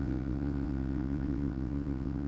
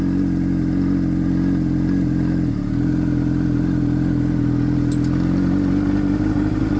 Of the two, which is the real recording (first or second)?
second